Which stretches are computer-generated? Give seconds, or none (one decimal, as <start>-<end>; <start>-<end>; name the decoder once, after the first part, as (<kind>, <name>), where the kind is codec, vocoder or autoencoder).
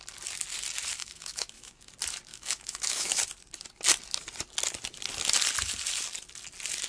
1.0-1.9 (autoencoder, DAC-VAE); 2.3-3.2